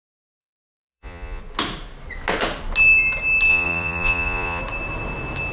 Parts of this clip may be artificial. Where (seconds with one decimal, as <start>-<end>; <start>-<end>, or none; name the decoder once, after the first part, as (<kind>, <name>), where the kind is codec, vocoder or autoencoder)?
0.4-1.4 (vocoder, Vocos); 3.5-4.6